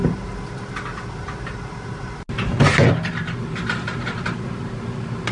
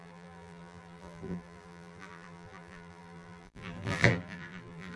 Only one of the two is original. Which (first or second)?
first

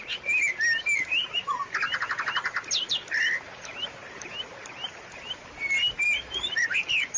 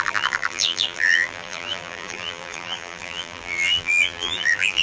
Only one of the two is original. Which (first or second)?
first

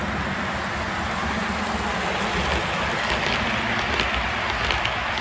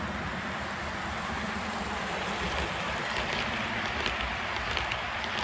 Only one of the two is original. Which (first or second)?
first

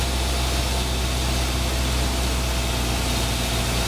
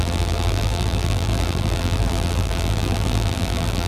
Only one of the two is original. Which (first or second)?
first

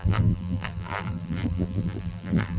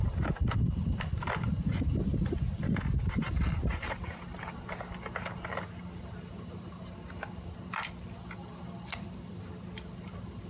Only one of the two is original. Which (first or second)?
second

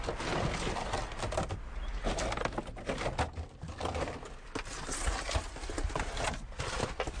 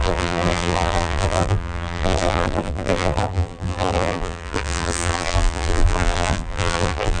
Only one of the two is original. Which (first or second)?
first